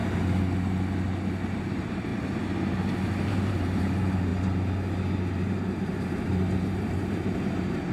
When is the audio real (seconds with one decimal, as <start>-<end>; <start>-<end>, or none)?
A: 0.0-1.6; 2.1-3.3; 4.3-5.3